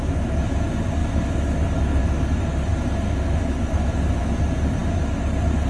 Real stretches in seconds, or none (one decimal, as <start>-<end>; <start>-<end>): 0.0-5.7